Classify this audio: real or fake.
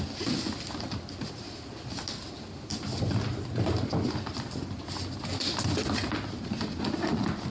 real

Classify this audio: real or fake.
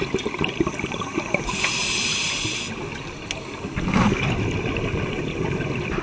real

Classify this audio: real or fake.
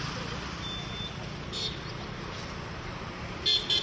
real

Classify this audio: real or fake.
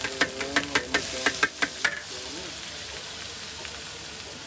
real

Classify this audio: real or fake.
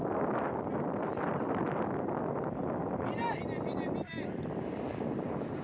fake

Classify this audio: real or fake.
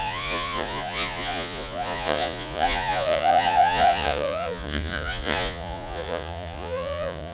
fake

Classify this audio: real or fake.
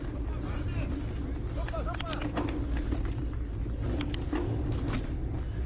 real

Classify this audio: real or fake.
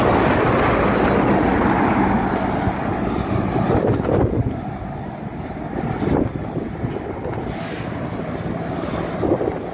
real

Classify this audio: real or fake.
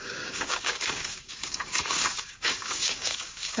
fake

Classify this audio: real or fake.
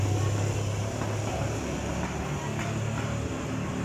real